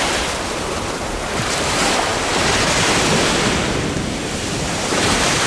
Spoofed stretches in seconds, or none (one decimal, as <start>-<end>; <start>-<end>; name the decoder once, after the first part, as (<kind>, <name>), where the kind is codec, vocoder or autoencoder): 0.0-2.1 (vocoder, BigVGAN v2); 3.3-5.5